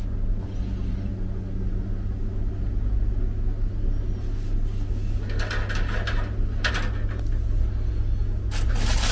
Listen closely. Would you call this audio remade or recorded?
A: recorded